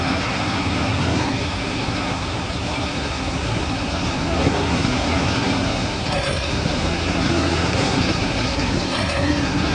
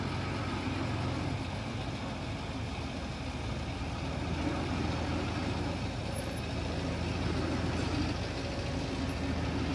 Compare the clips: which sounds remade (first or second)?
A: first